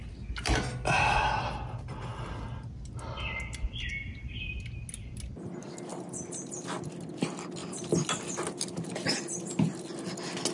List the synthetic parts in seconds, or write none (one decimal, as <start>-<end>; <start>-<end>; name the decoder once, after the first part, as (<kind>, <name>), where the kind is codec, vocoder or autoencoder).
none